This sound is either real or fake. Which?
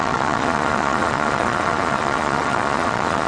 fake